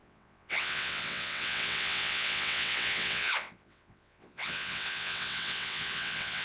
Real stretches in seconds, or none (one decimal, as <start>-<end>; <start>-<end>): none